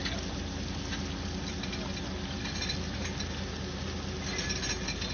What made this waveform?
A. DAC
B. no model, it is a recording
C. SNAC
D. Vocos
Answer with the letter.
B